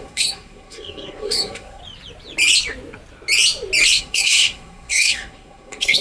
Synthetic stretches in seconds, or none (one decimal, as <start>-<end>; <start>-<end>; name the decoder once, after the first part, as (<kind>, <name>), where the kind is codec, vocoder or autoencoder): 0.0-1.8 (codec, SNAC); 4.0-6.0